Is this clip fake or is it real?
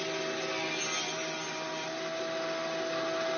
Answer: real